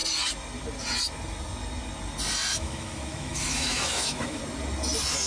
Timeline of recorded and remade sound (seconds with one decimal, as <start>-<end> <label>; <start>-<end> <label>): 0.0-2.5 recorded; 2.5-4.4 remade; 4.4-5.3 recorded